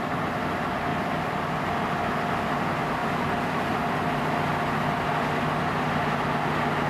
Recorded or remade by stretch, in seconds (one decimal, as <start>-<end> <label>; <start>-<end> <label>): 0.0-0.9 recorded; 0.9-1.6 remade; 1.6-3.0 recorded; 3.0-4.4 remade; 4.4-6.9 recorded